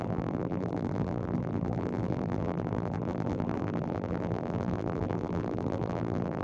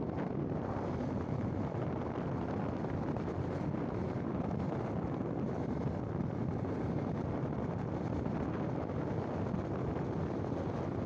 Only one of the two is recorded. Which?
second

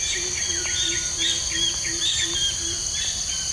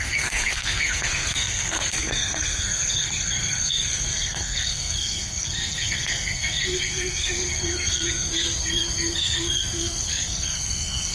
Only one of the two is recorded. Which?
first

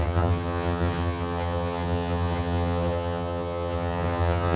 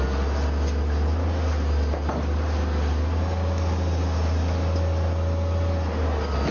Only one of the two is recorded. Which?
second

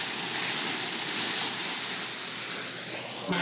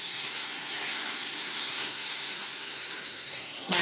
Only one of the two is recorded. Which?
first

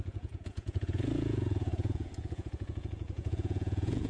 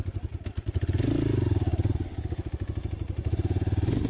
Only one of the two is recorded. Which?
second